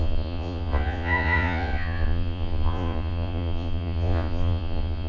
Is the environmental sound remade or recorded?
remade